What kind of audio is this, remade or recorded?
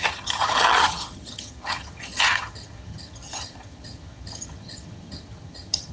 remade